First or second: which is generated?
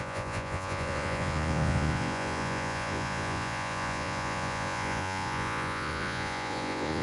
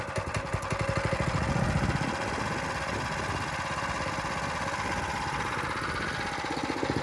first